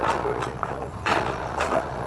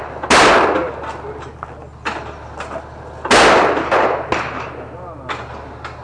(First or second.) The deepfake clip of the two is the first